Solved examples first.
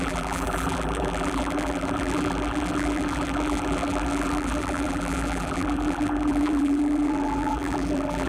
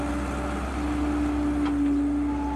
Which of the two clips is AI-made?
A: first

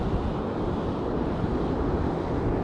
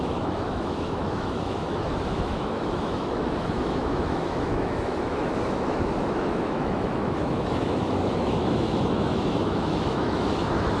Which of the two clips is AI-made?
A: second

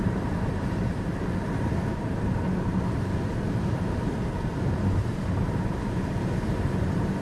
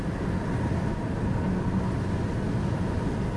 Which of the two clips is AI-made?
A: first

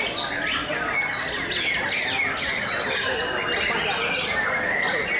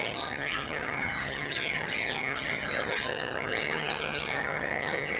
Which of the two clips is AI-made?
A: second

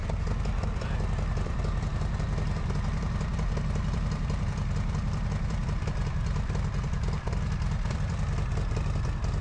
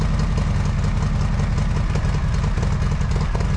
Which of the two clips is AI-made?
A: first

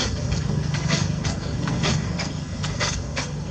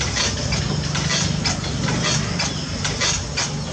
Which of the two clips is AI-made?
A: first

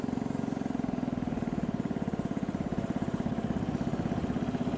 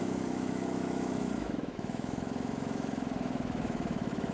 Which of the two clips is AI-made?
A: second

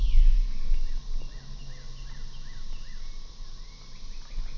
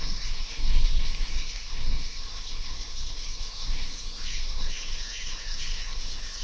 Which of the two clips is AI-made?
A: second